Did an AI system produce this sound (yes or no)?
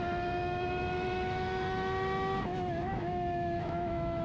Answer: yes